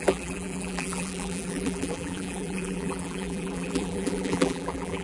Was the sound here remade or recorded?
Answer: remade